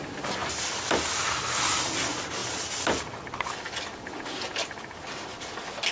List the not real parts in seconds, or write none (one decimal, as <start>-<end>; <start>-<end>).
none